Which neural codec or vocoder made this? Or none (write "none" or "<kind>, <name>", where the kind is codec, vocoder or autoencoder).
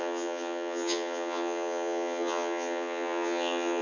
vocoder, HiFi-GAN